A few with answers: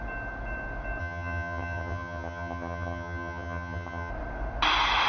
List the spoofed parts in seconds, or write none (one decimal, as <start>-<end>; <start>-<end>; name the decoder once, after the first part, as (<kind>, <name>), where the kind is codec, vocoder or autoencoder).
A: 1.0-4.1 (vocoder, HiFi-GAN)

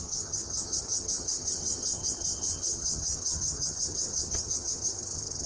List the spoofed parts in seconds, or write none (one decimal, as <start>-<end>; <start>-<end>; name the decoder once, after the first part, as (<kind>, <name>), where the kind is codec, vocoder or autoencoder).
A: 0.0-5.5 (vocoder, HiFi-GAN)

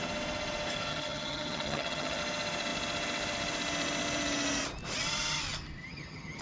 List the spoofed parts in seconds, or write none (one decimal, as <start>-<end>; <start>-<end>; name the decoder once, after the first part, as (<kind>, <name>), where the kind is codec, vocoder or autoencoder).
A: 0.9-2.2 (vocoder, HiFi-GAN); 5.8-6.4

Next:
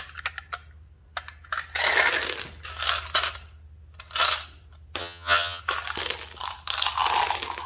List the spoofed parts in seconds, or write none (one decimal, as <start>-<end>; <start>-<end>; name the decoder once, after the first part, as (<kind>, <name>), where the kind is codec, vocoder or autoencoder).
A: 5.0-5.6 (vocoder, HiFi-GAN)

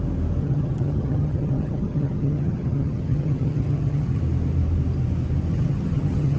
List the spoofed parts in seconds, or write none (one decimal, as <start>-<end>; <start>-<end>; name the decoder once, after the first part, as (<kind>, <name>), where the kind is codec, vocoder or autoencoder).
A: 0.4-4.2 (vocoder, HiFi-GAN); 5.5-6.4

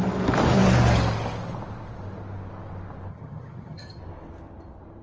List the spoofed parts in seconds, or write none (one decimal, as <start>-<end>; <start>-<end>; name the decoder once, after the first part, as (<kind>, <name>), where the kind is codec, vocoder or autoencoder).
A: 3.1-4.0 (vocoder, HiFi-GAN)